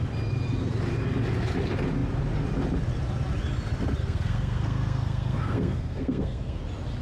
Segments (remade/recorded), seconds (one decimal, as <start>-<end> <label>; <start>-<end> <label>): 0.0-4.0 recorded; 4.0-6.6 remade; 6.6-7.0 recorded